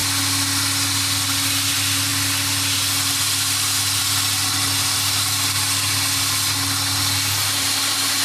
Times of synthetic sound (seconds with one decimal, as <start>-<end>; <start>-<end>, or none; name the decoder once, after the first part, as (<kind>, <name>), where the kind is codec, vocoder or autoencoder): none